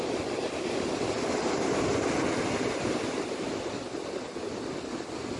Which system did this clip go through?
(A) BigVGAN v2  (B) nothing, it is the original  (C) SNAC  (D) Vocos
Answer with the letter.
B